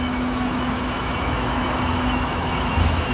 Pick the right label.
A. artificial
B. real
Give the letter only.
A